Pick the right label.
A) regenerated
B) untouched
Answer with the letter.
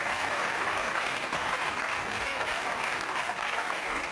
A